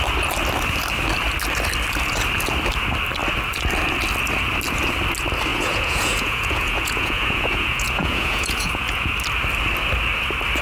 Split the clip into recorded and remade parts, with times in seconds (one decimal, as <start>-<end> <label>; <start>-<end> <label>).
0.0-5.5 recorded; 5.5-9.1 remade; 9.1-10.6 recorded